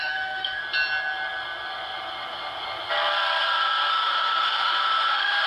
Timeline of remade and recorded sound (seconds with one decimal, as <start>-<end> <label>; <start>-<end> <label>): 0.0-0.6 remade; 0.6-3.9 recorded; 3.9-5.5 remade